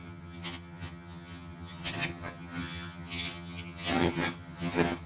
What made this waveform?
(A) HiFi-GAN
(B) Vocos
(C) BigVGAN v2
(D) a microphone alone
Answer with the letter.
A